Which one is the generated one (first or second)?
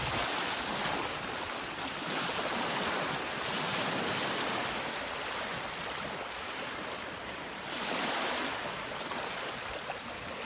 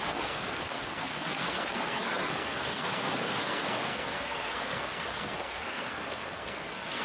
second